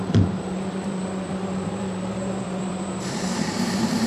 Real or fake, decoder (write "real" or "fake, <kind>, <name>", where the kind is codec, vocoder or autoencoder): fake, vocoder, BigVGAN v2